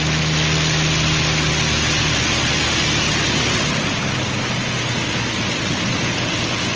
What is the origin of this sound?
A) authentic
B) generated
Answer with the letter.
A